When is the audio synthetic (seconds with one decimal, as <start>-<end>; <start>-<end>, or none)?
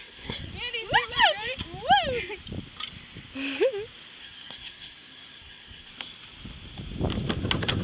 0.0-0.5; 4.2-5.9